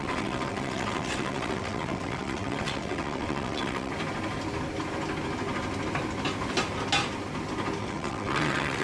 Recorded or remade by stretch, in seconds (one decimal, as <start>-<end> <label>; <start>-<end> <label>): 0.0-3.9 remade; 3.9-7.8 recorded; 7.8-8.8 remade